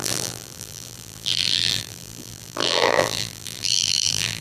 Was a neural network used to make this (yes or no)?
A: yes